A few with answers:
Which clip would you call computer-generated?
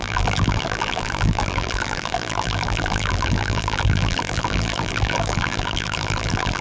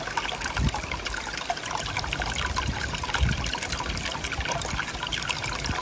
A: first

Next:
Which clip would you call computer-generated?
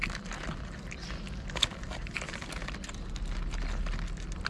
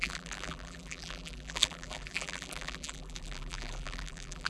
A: second